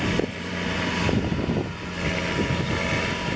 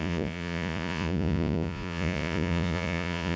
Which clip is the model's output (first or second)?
second